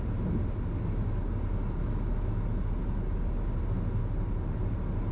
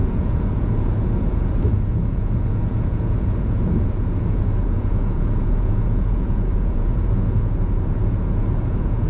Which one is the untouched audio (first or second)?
first